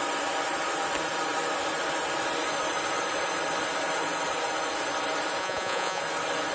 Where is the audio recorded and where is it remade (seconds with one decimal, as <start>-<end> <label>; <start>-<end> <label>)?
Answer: 0.0-5.4 recorded; 5.4-6.0 remade; 6.0-6.5 recorded